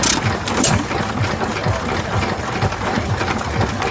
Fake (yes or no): no